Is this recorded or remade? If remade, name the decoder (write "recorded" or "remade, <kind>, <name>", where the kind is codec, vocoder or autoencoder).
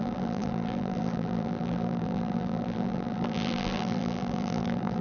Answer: remade, vocoder, BigVGAN v2